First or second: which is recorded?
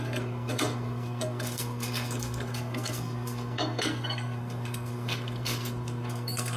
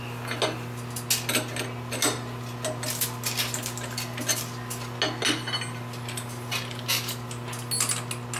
second